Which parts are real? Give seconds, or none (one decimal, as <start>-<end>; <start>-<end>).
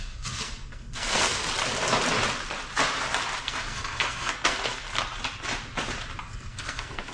1.4-3.4; 4.9-6.2